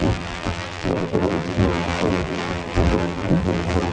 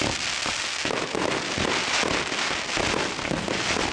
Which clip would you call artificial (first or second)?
first